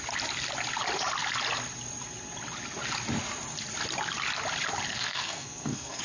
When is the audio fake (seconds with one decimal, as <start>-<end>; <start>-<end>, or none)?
4.9-6.0